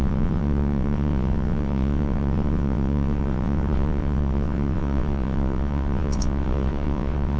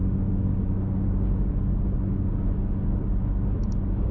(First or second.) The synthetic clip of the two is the first